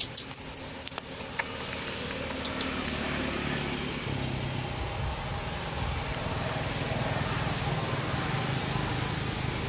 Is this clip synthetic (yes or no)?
no